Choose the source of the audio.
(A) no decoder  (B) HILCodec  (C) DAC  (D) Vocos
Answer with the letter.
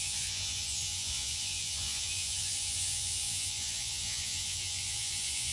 D